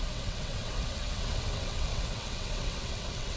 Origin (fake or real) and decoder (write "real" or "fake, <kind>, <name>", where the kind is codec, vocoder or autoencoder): fake, vocoder, WaveNeXt